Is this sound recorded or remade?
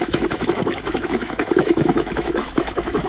remade